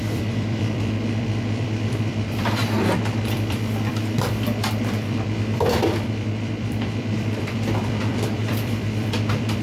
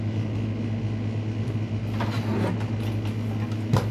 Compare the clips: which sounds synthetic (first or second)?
first